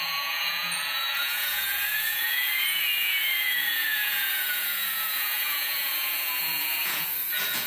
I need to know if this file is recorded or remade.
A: remade